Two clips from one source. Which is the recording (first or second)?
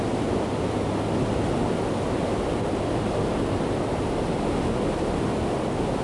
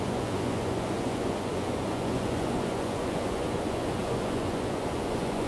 first